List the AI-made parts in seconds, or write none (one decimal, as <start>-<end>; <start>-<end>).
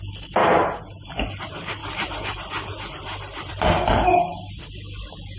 0.4-1.1; 4.3-5.4